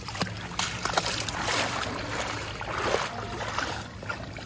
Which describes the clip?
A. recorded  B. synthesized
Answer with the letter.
A